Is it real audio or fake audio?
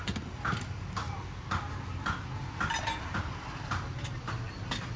real